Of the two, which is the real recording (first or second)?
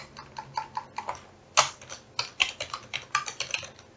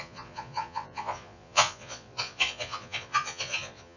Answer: first